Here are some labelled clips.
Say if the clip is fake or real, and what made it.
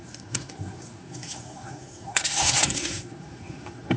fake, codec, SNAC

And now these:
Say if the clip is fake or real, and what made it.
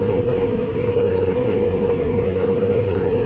fake, codec, SNAC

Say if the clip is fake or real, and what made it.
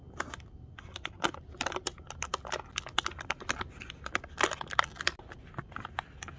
real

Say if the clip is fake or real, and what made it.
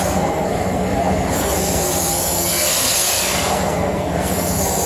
fake, codec, SNAC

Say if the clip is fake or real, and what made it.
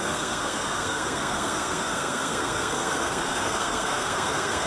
fake, codec, SNAC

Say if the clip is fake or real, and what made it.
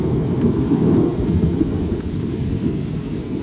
fake, codec, SNAC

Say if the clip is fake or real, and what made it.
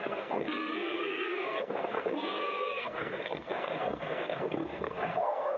fake, codec, SNAC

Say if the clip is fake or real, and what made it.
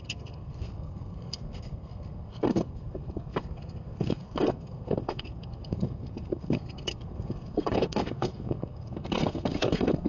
fake, codec, SNAC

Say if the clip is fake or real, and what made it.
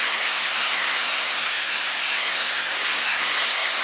fake, codec, SNAC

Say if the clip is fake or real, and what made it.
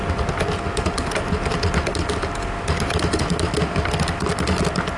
real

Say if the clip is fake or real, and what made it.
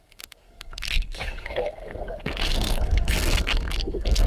fake, codec, SNAC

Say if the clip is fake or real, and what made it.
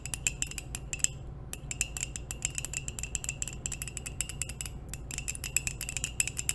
real